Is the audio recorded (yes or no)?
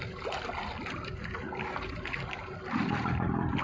yes